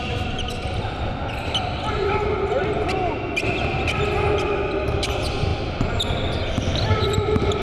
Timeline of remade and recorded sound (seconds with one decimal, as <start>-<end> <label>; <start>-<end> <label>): 0.0-7.6 recorded